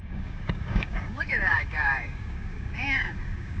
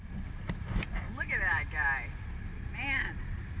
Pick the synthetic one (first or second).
first